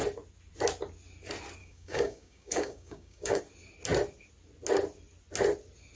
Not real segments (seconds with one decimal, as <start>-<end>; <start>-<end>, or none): 1.6-3.4